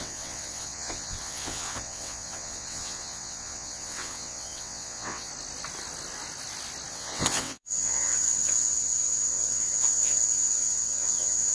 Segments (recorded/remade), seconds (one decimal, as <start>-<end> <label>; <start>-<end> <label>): 0.0-5.3 remade; 5.3-6.9 recorded; 6.9-11.5 remade